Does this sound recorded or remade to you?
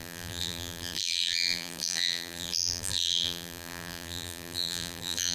remade